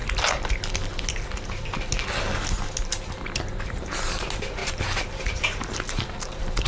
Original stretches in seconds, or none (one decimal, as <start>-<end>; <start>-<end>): 0.0-4.6